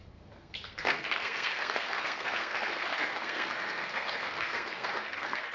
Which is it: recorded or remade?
remade